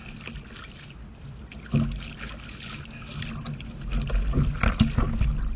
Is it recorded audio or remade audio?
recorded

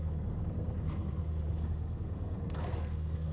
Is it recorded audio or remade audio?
remade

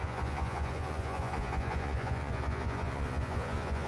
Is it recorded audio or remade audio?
remade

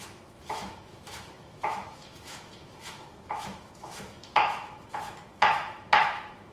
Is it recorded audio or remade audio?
remade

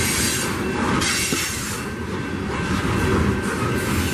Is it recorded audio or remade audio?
recorded